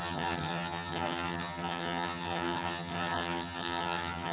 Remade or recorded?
remade